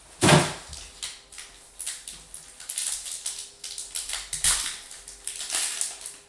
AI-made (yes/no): no